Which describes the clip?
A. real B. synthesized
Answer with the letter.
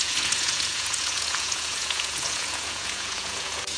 B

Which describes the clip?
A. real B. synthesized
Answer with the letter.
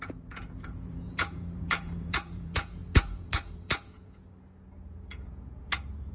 B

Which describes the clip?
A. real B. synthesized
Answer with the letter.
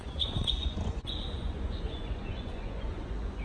B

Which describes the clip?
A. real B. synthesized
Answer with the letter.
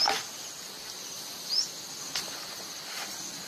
A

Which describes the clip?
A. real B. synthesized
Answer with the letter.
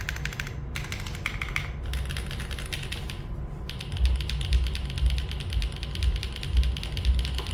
A